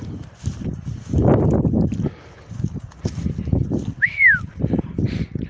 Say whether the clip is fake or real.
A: fake